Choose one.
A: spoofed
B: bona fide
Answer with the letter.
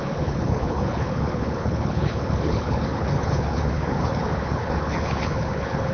A